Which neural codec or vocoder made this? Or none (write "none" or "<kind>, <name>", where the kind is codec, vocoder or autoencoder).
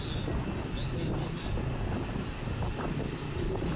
none